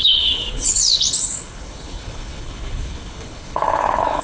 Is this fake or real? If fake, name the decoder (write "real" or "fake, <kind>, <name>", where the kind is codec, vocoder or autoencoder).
fake, codec, HILCodec